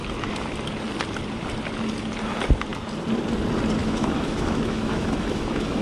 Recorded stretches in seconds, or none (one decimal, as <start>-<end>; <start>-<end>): 0.0-3.8